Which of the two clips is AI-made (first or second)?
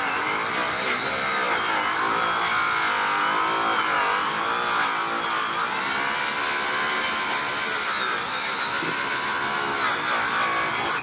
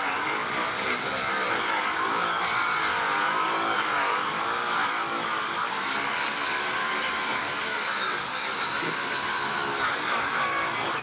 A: second